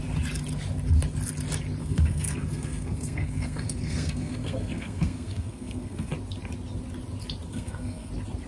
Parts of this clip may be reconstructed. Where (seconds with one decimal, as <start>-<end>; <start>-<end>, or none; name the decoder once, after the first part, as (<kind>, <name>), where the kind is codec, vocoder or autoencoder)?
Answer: 1.8-6.1 (codec, SNAC); 7.5-8.1